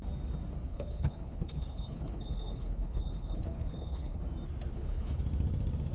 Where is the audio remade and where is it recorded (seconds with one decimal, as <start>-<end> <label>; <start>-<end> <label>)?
0.0-0.7 recorded; 0.7-4.2 remade; 4.2-4.7 recorded; 4.7-5.2 remade; 5.2-5.9 recorded